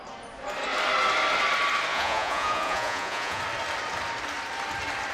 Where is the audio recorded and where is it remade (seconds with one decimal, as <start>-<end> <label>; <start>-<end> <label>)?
0.0-1.9 recorded; 1.9-3.4 remade; 3.4-5.1 recorded